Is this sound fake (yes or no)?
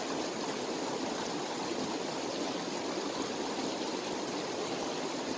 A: no